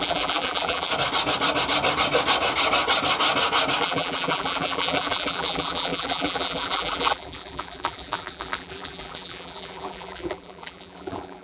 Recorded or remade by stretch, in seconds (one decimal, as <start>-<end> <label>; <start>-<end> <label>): 0.0-0.9 remade; 0.9-3.8 recorded; 3.8-11.4 remade